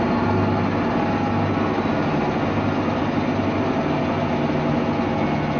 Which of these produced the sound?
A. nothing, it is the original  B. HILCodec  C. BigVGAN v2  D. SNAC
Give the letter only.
A